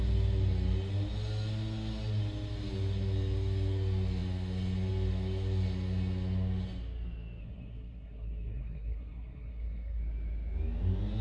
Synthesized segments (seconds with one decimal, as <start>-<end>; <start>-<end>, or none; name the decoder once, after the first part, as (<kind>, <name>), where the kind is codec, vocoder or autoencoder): 7.4-10.0 (codec, SNAC)